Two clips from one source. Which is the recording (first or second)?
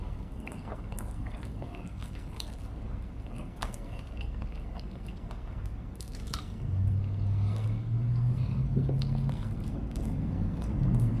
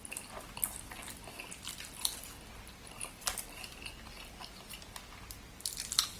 second